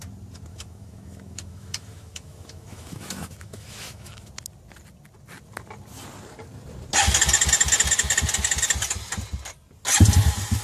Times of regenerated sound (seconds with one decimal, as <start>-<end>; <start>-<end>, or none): 0.5-4.3

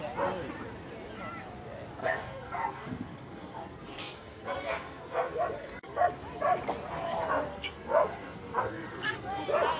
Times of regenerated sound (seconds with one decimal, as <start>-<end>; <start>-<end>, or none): 2.0-6.1; 7.5-9.3